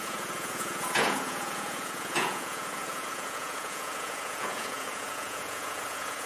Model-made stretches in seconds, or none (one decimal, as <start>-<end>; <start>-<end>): 0.0-6.3